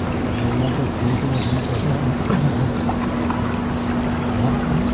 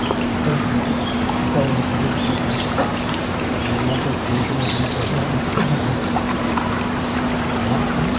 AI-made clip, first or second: second